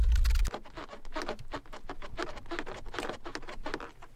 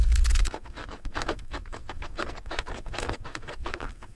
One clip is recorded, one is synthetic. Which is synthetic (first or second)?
second